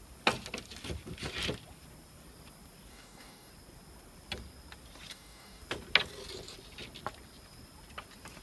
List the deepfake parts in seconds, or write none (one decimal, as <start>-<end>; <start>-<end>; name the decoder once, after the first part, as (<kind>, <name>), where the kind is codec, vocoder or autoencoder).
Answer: 2.9-3.5 (codec, DAC); 5.1-5.6